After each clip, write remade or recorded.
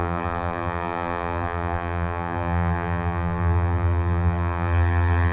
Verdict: remade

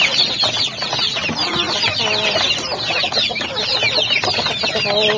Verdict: recorded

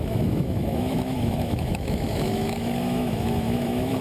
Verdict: remade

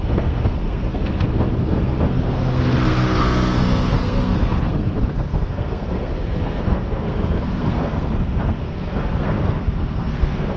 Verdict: remade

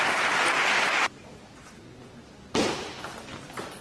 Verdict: recorded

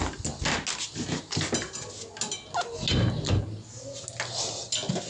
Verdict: recorded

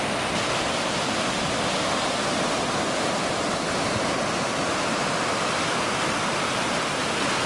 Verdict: recorded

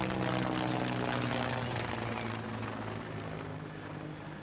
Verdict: recorded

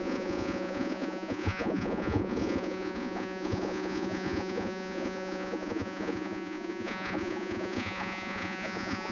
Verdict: remade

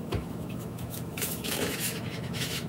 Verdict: remade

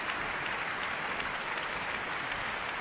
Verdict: recorded